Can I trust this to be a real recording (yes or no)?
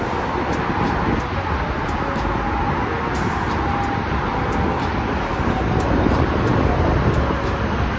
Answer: yes